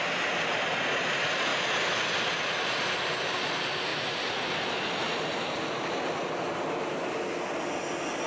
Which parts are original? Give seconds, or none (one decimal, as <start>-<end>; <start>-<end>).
0.0-8.3